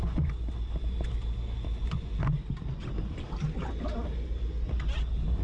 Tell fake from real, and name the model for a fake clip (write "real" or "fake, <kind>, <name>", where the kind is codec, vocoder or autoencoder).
real